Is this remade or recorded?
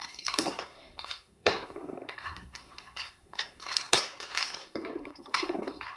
remade